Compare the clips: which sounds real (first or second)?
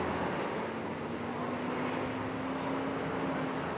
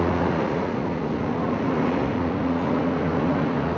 first